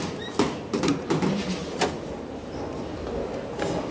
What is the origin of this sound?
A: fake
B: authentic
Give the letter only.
B